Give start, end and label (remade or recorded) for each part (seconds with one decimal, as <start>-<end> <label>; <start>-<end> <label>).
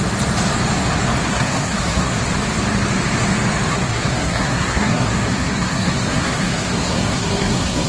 0.0-1.3 recorded; 1.3-2.2 remade; 2.2-3.7 recorded; 3.7-7.9 remade